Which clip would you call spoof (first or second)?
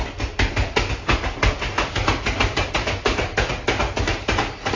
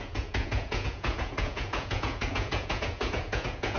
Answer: second